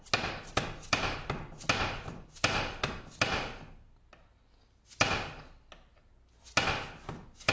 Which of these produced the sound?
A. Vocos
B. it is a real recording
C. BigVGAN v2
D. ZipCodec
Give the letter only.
B